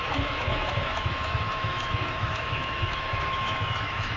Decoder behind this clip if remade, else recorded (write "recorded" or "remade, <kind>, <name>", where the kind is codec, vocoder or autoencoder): remade, autoencoder, DAC-VAE